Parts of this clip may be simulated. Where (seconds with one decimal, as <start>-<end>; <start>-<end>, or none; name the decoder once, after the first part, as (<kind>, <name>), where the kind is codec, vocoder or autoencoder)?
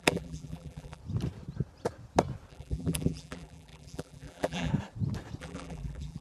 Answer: 0.0-1.0 (vocoder, BigVGAN v2); 2.5-4.7; 5.4-6.2